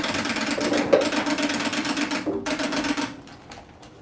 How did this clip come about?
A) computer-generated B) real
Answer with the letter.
B